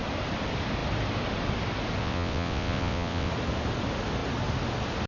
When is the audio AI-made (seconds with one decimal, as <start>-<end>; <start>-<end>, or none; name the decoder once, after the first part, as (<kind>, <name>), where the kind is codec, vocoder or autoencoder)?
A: 2.0-3.3 (vocoder, WaveNeXt)